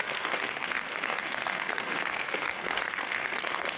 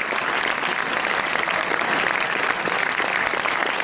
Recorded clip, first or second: second